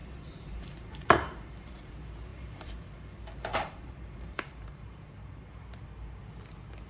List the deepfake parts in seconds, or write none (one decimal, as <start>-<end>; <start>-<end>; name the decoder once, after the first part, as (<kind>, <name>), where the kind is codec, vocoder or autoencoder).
0.0-1.9 (vocoder, BigVGAN v2); 2.3-6.4